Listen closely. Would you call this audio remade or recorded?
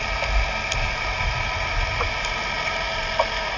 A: recorded